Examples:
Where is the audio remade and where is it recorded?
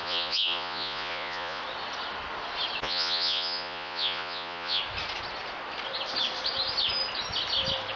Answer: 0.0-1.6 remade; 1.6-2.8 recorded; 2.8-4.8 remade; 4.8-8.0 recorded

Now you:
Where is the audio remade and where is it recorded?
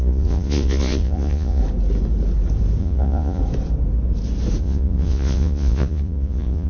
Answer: 0.0-1.6 remade; 1.6-2.8 recorded; 2.8-3.4 remade; 3.4-4.6 recorded; 4.6-6.7 remade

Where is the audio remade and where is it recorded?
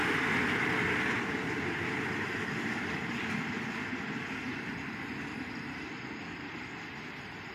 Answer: 0.0-7.5 recorded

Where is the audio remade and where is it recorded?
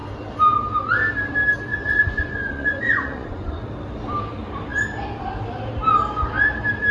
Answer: 0.0-1.7 recorded; 1.7-3.7 remade; 3.7-6.9 recorded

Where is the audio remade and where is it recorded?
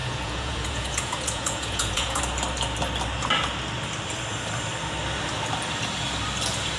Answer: 0.0-2.2 remade; 2.2-6.8 recorded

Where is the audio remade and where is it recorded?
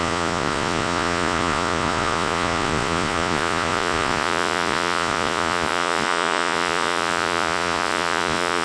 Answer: 0.0-8.6 remade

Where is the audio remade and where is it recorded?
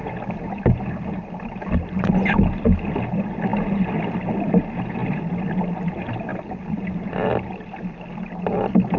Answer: 0.0-9.0 recorded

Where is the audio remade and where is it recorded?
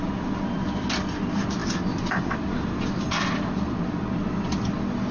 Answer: 0.0-5.1 recorded